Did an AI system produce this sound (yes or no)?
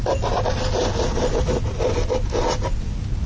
no